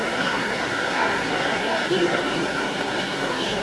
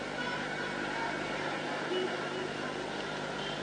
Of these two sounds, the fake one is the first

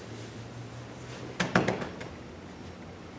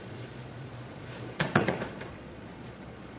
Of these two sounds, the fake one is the second